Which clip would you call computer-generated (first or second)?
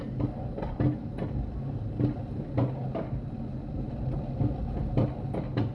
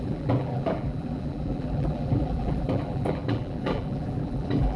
second